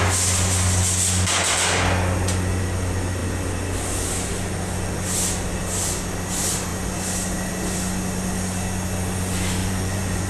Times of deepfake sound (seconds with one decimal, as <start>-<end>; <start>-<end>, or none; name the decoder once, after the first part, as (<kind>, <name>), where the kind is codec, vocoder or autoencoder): 9.6-10.3 (vocoder, Vocos)